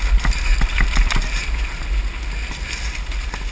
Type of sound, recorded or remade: recorded